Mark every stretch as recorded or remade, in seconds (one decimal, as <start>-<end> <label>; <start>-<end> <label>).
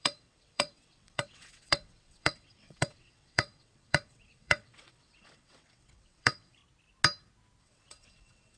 0.0-6.6 remade; 6.6-7.6 recorded; 7.6-8.6 remade